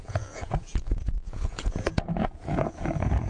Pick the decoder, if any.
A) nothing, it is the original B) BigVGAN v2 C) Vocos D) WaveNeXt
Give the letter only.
C